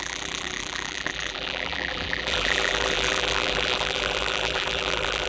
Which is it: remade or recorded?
remade